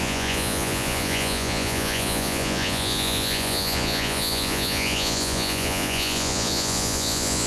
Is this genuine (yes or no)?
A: no